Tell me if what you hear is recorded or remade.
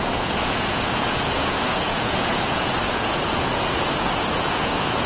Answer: remade